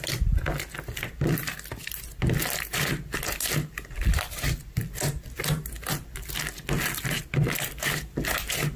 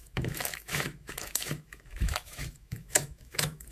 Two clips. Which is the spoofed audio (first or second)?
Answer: second